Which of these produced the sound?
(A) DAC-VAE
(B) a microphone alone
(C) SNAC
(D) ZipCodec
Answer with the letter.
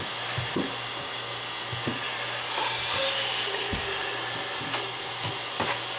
B